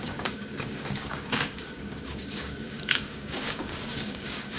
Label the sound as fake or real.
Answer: fake